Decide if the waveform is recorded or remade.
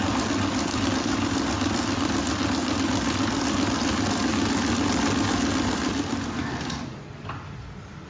recorded